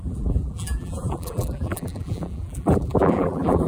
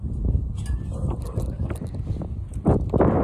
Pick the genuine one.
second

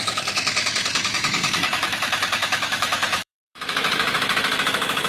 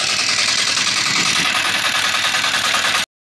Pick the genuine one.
second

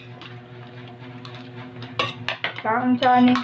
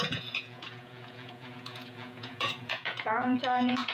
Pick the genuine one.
first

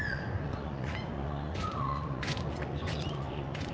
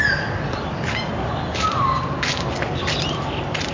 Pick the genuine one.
second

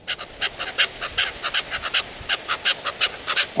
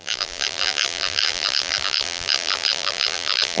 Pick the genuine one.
first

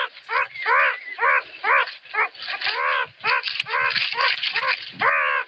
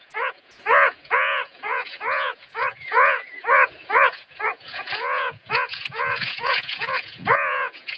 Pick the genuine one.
first